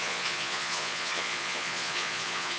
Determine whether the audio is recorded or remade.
remade